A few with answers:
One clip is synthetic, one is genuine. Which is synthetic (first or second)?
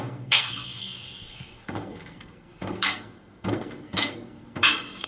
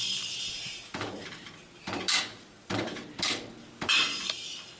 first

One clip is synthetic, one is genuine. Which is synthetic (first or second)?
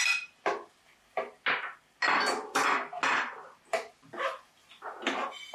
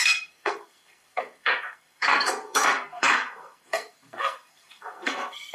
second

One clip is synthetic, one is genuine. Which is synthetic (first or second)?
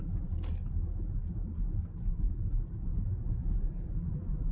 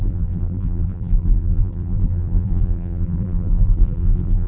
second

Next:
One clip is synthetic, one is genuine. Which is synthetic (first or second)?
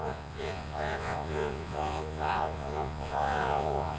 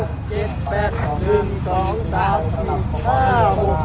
first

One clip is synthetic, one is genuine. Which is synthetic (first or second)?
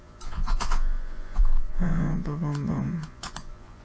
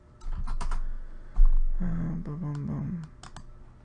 first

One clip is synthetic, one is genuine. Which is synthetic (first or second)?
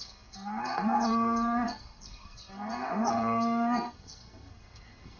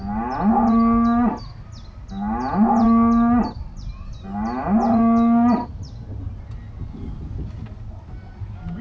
first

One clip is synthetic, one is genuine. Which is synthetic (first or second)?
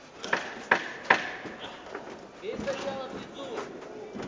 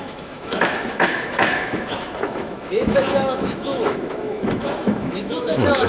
second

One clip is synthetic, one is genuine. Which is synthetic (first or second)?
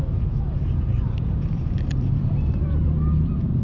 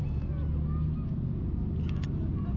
first